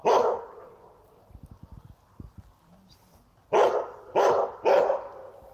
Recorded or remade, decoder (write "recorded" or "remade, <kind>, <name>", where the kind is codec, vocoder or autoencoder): recorded